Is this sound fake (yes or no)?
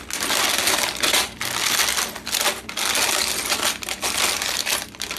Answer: no